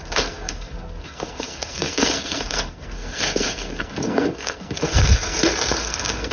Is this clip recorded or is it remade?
remade